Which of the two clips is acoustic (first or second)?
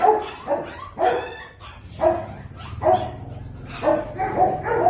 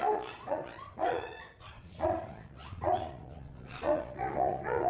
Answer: first